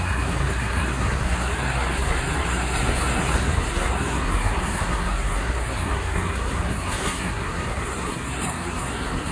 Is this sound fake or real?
fake